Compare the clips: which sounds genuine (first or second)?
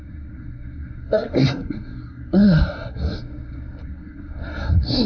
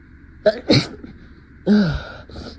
second